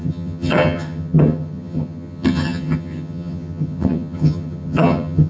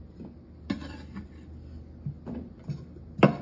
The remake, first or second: first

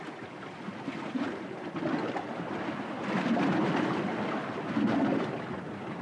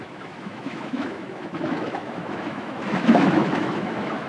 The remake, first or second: second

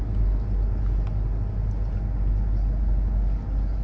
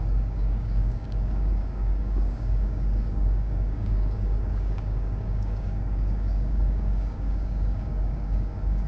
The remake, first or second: second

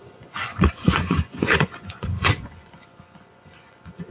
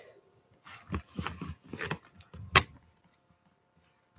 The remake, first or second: first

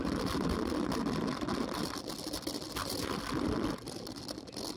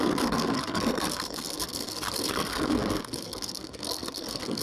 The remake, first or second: second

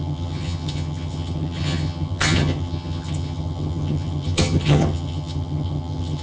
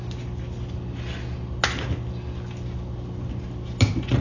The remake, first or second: first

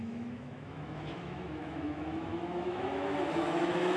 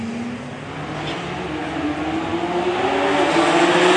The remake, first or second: first